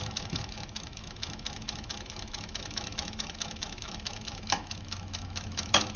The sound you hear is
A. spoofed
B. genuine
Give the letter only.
A